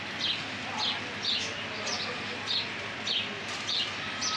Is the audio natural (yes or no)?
yes